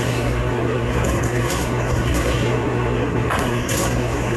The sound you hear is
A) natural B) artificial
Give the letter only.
B